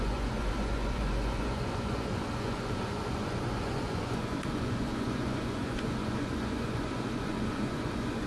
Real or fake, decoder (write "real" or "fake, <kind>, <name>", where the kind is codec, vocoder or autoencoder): fake, vocoder, Vocos